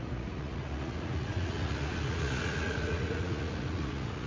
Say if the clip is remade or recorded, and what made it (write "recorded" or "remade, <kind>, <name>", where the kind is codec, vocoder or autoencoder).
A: remade, vocoder, Vocos